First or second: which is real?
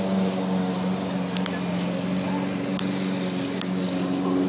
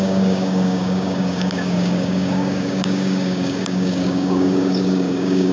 first